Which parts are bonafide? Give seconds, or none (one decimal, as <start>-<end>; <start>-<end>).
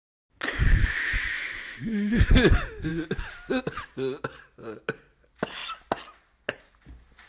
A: 0.0-0.8; 2.2-7.3